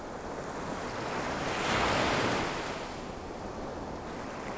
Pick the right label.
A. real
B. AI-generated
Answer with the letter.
A